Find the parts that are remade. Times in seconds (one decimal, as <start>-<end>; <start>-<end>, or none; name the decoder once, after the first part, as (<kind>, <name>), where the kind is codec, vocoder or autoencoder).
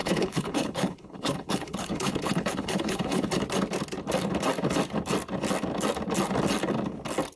0.0-3.3 (codec, HILCodec)